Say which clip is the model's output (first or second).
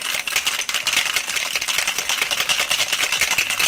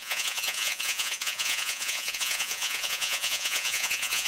second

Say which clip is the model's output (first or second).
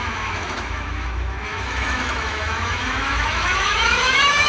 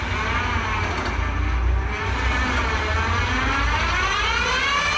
first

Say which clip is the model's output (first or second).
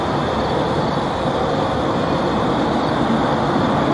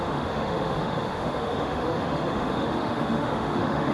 second